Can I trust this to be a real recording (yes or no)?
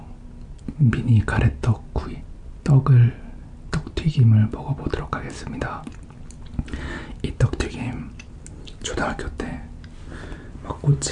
yes